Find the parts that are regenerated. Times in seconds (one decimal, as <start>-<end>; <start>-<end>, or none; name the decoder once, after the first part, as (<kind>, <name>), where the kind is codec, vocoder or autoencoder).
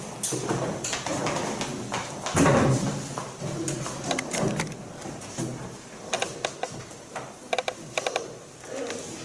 none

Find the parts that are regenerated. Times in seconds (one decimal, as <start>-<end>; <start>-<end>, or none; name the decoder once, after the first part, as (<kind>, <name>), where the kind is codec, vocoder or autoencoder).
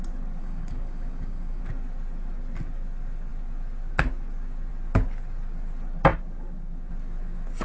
0.4-1.6 (codec, DAC)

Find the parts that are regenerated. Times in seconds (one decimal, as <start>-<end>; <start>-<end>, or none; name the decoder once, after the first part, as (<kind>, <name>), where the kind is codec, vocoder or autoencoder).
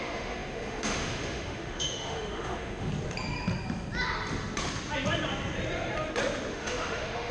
0.0-2.9 (autoencoder, DAC-VAE); 6.5-7.3